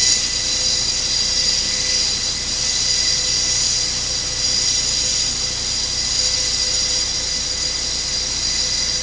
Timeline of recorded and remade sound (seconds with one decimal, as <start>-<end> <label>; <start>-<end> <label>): 0.0-9.0 recorded